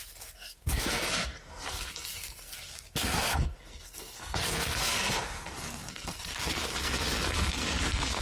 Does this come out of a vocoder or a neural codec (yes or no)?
yes